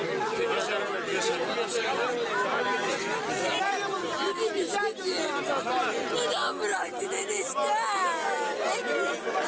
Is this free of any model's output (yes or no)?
yes